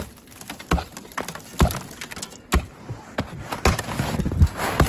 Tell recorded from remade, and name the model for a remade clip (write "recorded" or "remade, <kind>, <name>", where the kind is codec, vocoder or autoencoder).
recorded